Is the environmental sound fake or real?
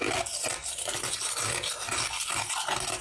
real